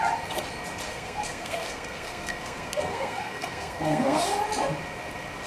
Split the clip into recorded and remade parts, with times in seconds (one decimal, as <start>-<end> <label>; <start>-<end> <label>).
0.0-0.9 recorded; 0.9-4.2 remade; 4.2-5.5 recorded